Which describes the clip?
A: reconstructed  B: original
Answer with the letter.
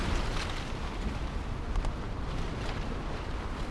B